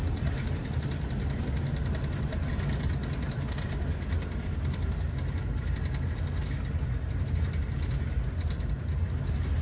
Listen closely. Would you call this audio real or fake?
real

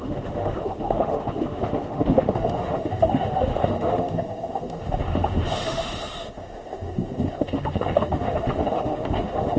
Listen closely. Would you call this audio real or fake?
fake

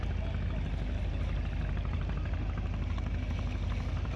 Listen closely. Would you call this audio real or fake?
real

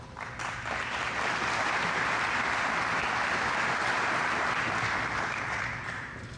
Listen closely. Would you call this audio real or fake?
real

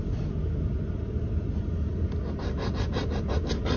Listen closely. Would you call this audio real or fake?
real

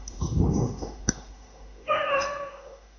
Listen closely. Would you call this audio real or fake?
fake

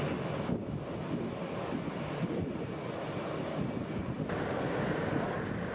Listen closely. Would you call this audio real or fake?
real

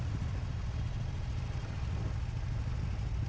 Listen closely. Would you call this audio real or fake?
real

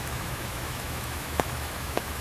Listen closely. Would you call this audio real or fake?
fake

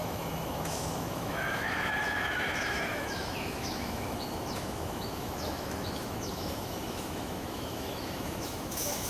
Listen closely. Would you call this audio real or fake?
fake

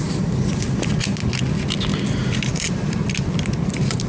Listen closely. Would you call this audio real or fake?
real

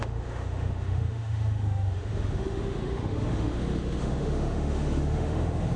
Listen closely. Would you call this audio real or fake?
fake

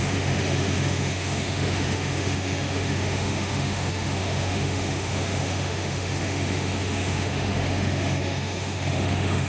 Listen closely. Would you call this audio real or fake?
fake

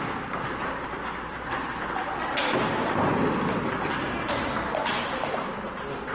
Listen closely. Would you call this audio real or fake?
real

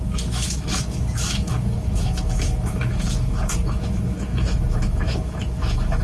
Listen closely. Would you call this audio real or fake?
fake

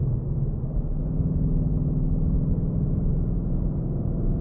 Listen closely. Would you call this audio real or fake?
real